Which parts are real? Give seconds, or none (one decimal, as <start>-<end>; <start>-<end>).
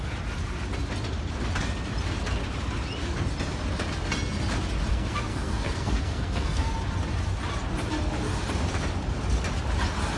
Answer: 0.0-4.9; 6.7-10.2